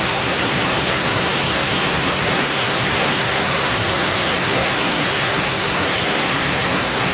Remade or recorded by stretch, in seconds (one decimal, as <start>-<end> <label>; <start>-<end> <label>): 0.0-7.1 remade